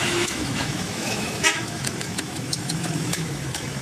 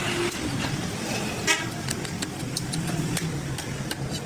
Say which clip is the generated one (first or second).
first